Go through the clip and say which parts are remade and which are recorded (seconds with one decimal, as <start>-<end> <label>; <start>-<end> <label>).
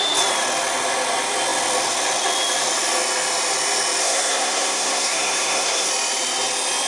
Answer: 0.0-4.0 recorded; 4.0-5.9 remade; 5.9-6.9 recorded